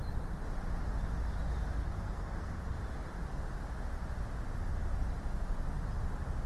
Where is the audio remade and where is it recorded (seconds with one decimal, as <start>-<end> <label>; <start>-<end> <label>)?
0.0-1.8 recorded; 1.8-2.8 remade; 2.8-6.5 recorded